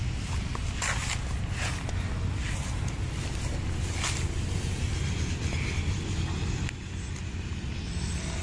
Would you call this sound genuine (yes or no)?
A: yes